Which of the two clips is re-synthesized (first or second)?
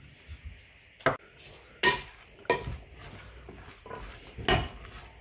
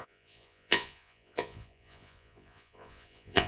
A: second